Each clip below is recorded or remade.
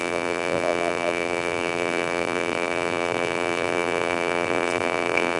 remade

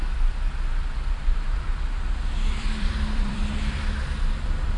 remade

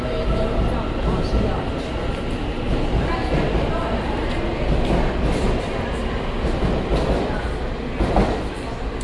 recorded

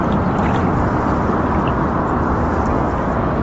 remade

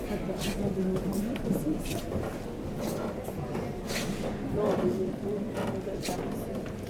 recorded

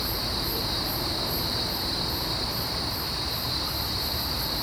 remade